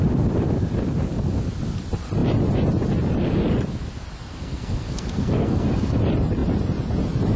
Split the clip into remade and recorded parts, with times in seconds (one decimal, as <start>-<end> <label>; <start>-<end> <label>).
0.0-4.3 recorded; 4.3-6.0 remade; 6.0-7.4 recorded